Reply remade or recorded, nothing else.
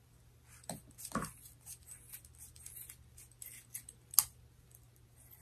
recorded